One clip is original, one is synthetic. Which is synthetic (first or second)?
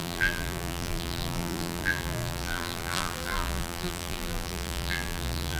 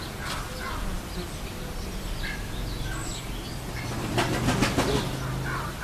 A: first